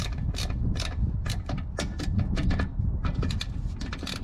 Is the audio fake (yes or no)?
no